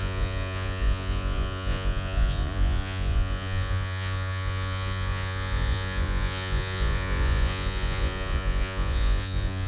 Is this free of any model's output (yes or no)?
no